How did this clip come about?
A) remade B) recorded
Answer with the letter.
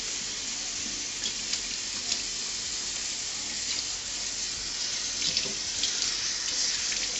B